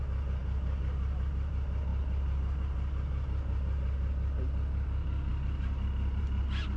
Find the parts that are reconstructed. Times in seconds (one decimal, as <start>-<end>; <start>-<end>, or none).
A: 0.4-1.5; 1.9-2.4; 5.3-6.2